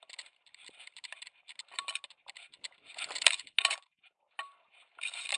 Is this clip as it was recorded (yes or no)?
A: yes